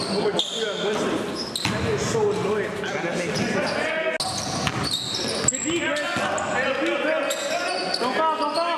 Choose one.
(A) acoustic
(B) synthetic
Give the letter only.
A